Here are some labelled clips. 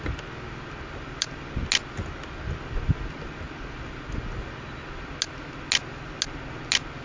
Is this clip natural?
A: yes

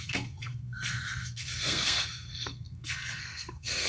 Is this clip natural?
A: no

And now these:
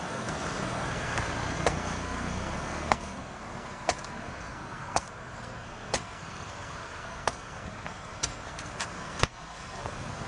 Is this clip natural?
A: no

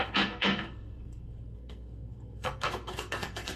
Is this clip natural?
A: no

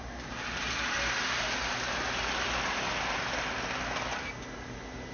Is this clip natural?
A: yes